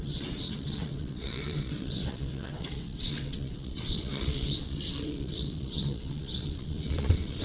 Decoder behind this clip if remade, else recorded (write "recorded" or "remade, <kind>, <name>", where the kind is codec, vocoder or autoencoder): remade, vocoder, WaveNeXt